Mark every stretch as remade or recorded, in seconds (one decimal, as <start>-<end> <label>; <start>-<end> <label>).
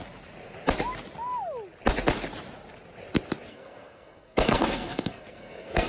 0.0-3.5 recorded; 3.5-5.9 remade